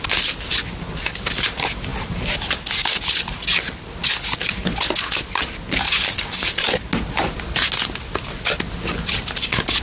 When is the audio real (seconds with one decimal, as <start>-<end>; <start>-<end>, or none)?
0.0-9.8